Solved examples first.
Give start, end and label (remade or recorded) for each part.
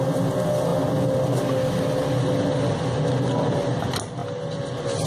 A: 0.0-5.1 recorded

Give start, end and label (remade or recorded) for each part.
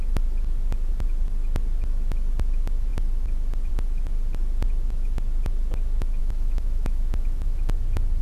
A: 0.0-6.2 recorded; 6.2-7.7 remade; 7.7-8.2 recorded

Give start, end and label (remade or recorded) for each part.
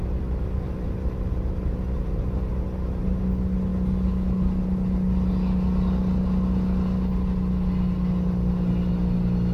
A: 0.0-9.5 recorded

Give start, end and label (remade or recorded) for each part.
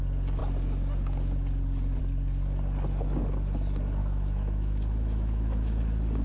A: 0.0-4.0 recorded; 4.0-5.8 remade; 5.8-6.2 recorded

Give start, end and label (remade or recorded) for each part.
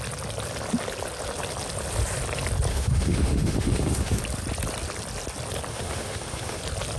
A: 0.0-2.7 recorded; 2.7-4.2 remade; 4.2-5.7 recorded; 5.7-6.6 remade; 6.6-7.0 recorded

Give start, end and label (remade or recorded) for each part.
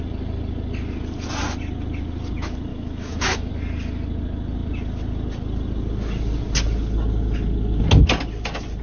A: 0.0-2.7 recorded; 2.7-3.5 remade; 3.5-8.8 recorded